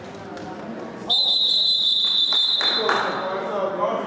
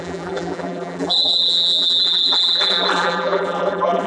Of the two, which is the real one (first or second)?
first